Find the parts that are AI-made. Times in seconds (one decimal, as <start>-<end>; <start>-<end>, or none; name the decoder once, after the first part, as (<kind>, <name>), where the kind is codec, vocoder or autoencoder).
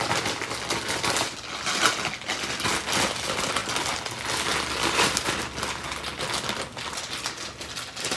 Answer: none